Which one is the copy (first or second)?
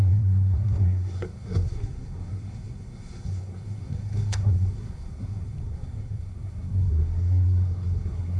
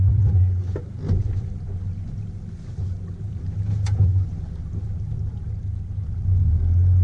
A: first